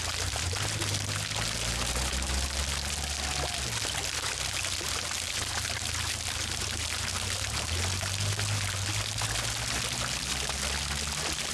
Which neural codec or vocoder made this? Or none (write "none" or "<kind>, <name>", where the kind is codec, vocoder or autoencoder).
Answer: none